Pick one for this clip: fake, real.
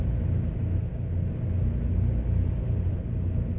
real